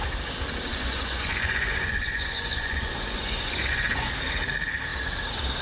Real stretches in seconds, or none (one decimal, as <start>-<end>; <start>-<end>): 0.0-0.7; 4.1-5.6